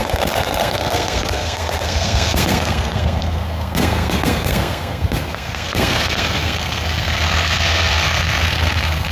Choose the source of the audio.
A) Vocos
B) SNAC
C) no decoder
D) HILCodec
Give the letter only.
B